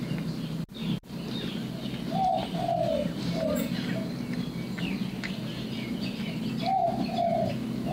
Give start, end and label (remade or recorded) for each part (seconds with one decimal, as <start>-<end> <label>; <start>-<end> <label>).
0.0-7.9 recorded